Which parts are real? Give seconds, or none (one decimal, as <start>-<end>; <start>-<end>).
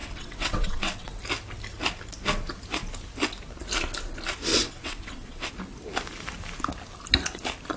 1.2-4.5; 5.5-7.8